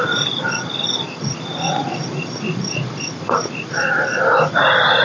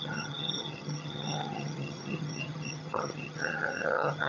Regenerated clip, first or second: second